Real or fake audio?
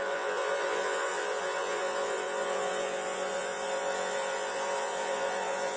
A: fake